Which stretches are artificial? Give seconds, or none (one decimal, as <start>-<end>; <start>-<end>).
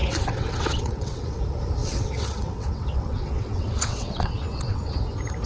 0.0-1.4; 1.8-5.0